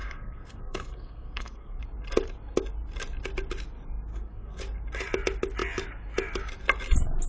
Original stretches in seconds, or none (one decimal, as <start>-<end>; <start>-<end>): 1.8-4.1; 4.6-7.3